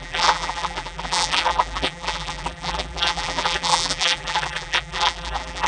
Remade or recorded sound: remade